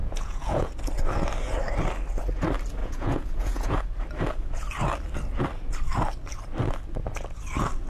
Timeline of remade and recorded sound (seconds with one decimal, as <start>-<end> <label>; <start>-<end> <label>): 0.0-0.7 remade; 0.7-2.8 recorded; 2.8-3.7 remade; 3.7-7.9 recorded